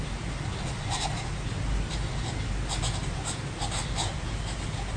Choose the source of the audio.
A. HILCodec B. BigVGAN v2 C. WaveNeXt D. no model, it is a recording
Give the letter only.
D